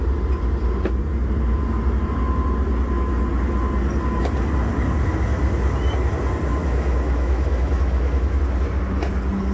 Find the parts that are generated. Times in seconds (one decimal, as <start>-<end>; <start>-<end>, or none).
6.6-8.4